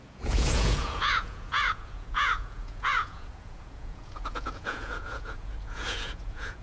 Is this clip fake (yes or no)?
yes